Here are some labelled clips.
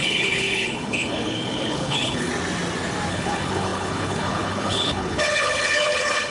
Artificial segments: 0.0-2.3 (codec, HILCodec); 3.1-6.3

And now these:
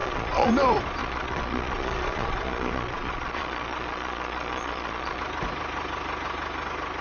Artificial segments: 0.0-0.5 (vocoder, Vocos); 1.0-5.2

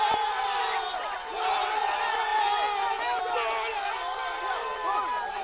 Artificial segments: none

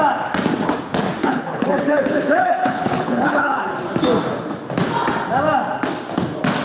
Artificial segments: 1.2-3.7 (codec, HILCodec)

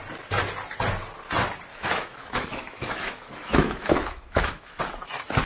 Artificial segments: 1.7-4.8 (autoencoder, DAC-VAE)